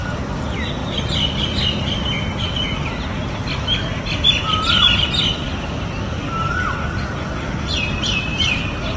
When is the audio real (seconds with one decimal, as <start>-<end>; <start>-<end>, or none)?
0.0-9.0